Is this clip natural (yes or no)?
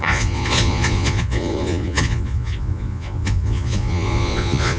no